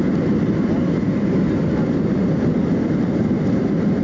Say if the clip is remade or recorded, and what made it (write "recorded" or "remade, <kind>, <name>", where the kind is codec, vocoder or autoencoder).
recorded